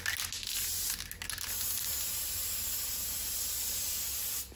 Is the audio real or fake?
real